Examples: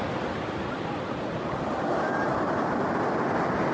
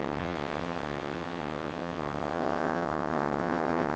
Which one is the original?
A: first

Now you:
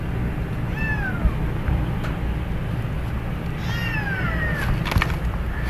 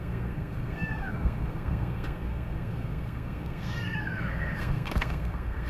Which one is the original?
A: first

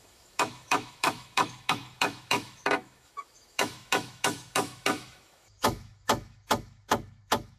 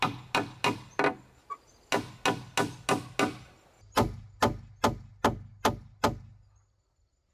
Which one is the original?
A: second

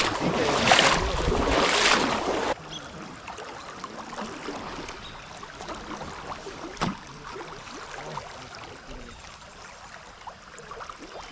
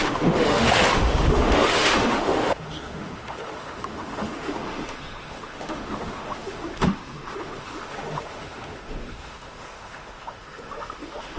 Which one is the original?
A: first